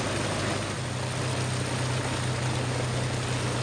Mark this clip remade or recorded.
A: recorded